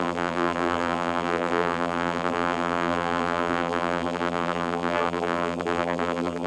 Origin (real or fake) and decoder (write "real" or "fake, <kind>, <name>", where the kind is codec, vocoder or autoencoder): fake, vocoder, BigVGAN v2